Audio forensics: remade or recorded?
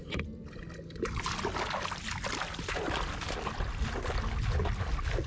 recorded